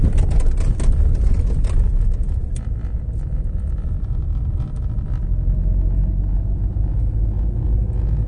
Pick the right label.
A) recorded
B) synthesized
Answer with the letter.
A